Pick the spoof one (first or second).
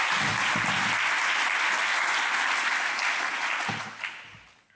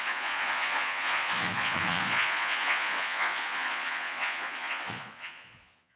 second